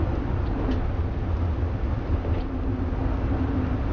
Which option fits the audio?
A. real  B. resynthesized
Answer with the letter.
A